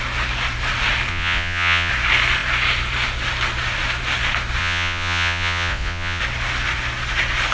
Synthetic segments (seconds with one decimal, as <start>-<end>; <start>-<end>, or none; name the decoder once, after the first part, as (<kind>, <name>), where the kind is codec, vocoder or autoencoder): 1.1-1.9 (vocoder, Vocos); 4.6-6.2